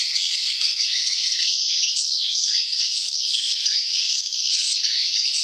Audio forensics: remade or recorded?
remade